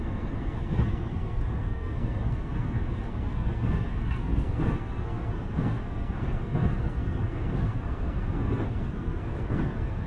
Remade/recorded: remade